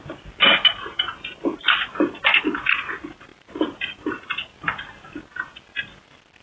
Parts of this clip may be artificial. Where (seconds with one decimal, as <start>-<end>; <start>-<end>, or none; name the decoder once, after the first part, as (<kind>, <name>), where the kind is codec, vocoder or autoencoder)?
3.3-4.6 (vocoder, BigVGAN v2)